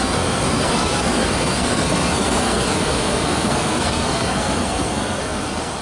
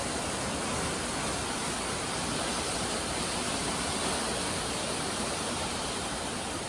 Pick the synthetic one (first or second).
first